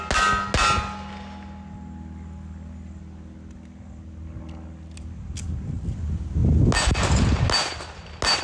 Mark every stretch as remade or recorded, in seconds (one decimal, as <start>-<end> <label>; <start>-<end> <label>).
0.0-8.4 recorded